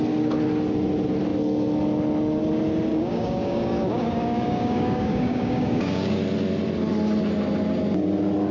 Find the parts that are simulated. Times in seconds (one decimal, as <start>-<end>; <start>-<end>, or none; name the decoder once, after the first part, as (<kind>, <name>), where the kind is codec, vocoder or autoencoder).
2.9-6.2 (codec, DAC)